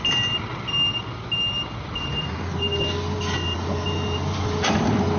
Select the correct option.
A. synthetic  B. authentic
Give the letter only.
B